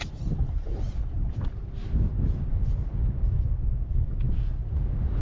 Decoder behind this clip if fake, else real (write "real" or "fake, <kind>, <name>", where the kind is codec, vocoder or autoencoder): real